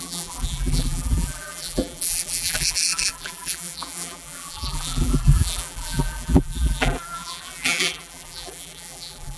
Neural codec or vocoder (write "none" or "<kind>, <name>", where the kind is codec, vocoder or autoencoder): vocoder, BigVGAN v2